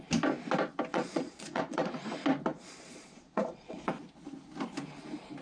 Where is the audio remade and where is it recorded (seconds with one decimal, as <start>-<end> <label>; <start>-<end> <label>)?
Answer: 0.0-0.9 recorded; 0.9-1.9 remade; 1.9-2.5 recorded; 2.5-3.9 remade; 3.9-5.4 recorded